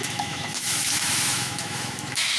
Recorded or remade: remade